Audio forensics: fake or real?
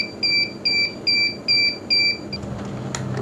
real